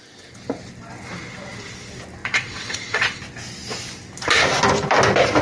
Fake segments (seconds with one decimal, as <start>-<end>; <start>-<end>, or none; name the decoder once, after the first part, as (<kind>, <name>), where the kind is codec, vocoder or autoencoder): 2.2-3.2 (vocoder, WaveNeXt)